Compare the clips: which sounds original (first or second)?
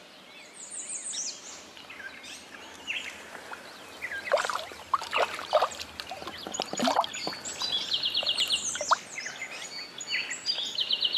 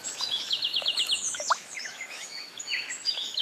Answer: first